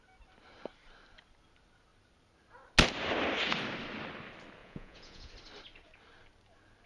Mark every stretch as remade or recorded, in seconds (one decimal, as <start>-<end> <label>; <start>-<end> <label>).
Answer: 0.0-4.6 recorded; 4.6-5.3 remade; 5.3-6.9 recorded